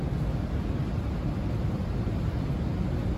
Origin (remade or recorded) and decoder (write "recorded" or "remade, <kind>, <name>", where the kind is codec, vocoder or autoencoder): recorded